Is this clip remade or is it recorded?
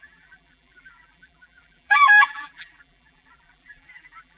remade